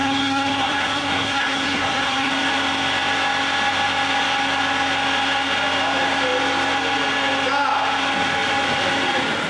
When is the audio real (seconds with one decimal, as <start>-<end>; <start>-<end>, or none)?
2.3-9.5